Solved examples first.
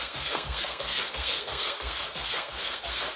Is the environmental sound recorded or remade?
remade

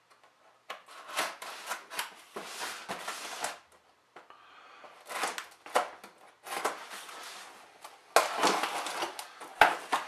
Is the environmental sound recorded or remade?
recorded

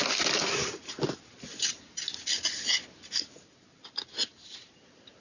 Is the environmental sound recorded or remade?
recorded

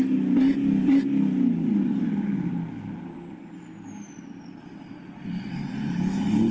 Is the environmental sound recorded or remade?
recorded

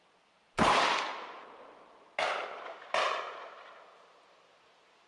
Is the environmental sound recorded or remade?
recorded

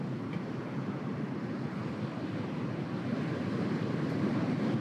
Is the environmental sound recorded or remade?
recorded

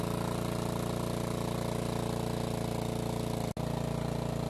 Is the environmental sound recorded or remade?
recorded